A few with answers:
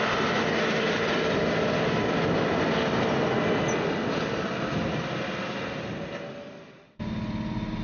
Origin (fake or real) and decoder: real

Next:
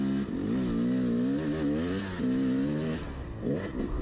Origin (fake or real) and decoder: real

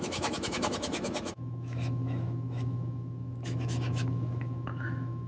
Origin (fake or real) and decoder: fake, autoencoder, DAC-VAE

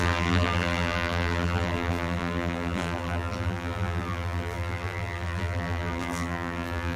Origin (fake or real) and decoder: fake, vocoder, BigVGAN v2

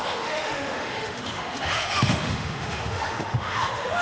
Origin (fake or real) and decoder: fake, autoencoder, DAC-VAE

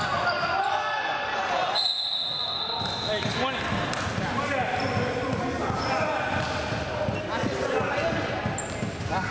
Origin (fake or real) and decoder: real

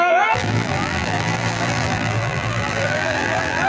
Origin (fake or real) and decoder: fake, vocoder, BigVGAN v2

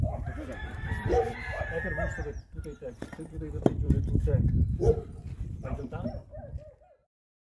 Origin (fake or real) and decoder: fake, vocoder, BigVGAN v2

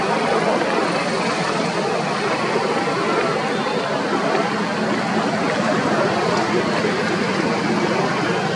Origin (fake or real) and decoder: real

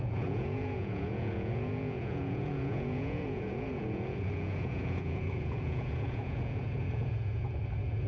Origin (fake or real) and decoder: fake, vocoder, Vocos